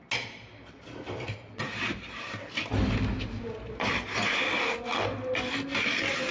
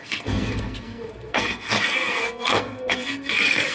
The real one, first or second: first